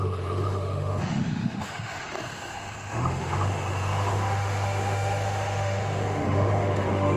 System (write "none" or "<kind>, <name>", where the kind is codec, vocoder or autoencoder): autoencoder, DAC-VAE